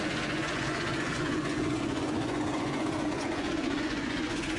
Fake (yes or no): yes